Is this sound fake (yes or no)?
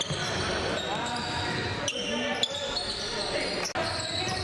no